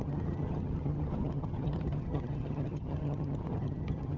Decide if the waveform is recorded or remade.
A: remade